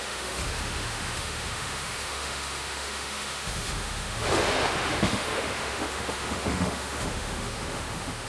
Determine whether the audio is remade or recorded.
remade